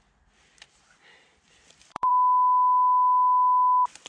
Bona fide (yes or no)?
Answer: no